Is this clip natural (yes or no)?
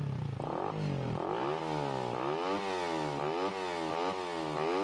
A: yes